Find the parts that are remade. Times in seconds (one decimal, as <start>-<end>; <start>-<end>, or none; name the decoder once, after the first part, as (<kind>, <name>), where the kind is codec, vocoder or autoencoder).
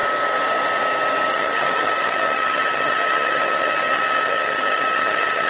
1.3-5.5 (vocoder, HiFi-GAN)